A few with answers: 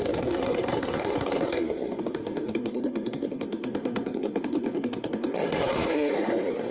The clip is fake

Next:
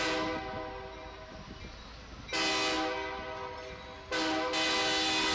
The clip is real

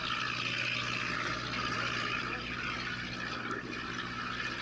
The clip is real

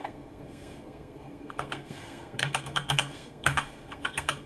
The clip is fake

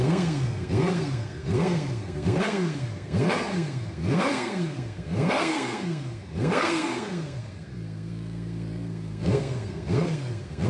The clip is fake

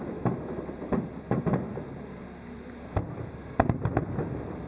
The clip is real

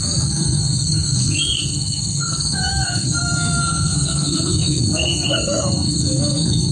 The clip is fake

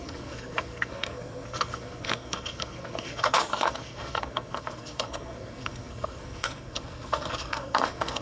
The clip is fake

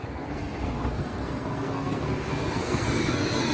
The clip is fake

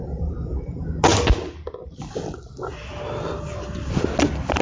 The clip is real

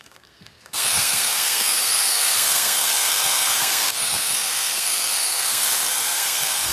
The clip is fake